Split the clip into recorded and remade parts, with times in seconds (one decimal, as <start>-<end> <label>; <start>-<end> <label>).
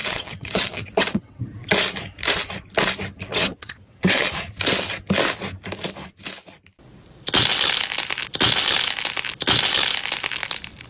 0.0-1.4 remade; 1.4-3.3 recorded; 3.3-4.3 remade; 4.3-10.9 recorded